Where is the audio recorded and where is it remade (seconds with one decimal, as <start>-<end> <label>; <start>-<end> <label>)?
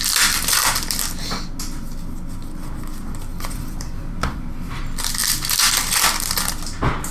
0.0-3.3 recorded; 3.3-4.8 remade; 4.8-7.1 recorded